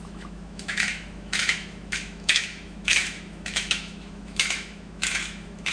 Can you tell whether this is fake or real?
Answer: fake